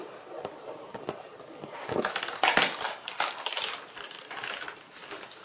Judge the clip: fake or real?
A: real